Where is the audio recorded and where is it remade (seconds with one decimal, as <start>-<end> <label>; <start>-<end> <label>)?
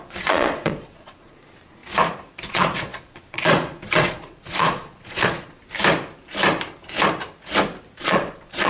0.0-1.8 remade; 1.8-2.5 recorded; 2.5-5.6 remade; 5.6-8.0 recorded; 8.0-8.7 remade